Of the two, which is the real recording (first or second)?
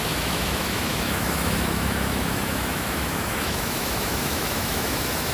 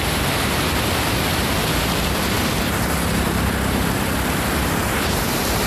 second